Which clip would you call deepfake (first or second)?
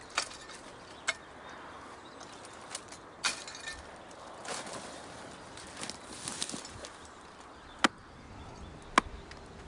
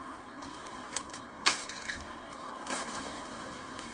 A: second